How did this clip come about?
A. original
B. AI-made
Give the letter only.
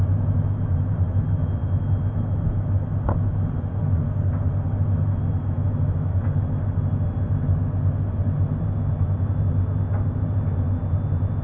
A